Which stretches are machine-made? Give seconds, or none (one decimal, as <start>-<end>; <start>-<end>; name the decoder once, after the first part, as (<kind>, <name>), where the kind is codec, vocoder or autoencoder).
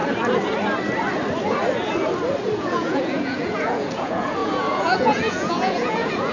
2.6-6.3 (vocoder, Vocos)